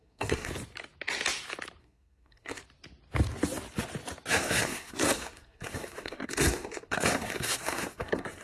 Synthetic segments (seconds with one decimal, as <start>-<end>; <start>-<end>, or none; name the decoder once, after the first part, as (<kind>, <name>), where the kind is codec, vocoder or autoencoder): 0.0-0.5 (codec, SNAC); 1.8-2.6; 4.3-8.4